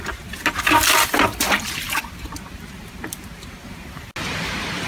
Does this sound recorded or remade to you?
recorded